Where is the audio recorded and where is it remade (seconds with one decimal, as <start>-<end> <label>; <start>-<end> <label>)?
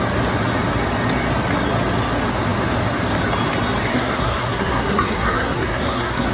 0.0-3.9 recorded; 3.9-6.3 remade